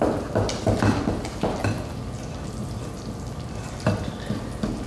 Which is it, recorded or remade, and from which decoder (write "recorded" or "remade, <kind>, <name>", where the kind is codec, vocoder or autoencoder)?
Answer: recorded